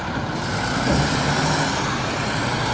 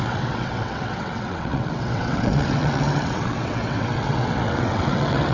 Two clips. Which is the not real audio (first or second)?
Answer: second